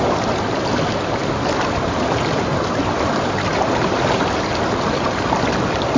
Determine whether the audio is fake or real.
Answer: real